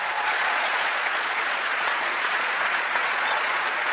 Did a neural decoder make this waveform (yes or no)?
yes